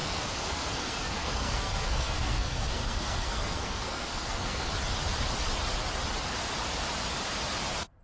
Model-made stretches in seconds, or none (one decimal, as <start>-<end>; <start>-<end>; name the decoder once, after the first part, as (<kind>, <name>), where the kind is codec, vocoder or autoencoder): 0.0-4.7 (codec, SNAC)